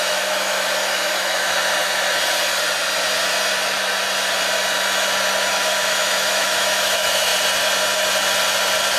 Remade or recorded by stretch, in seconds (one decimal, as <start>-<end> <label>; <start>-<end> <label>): 0.0-1.6 remade; 1.6-5.5 recorded; 5.5-7.3 remade; 7.3-9.0 recorded